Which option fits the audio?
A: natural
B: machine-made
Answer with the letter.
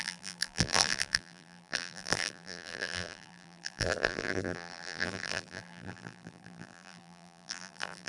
B